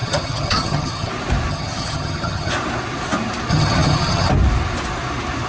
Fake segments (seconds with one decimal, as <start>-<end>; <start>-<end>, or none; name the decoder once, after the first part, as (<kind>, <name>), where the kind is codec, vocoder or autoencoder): 0.0-1.1 (vocoder, HiFi-GAN); 1.5-2.5; 3.5-4.3